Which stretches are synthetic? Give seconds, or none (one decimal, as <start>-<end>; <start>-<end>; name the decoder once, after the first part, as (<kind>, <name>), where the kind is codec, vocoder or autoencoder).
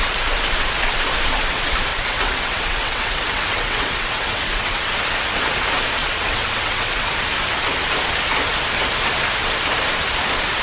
1.9-4.9 (vocoder, WaveNeXt); 6.0-7.1